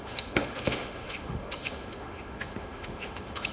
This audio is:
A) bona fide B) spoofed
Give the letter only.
B